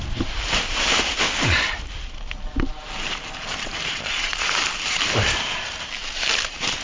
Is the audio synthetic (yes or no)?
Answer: yes